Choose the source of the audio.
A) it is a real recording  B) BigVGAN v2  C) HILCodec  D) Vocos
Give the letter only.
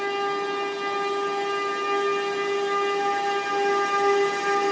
A